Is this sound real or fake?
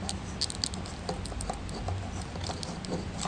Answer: real